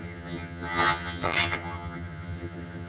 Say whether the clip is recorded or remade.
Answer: remade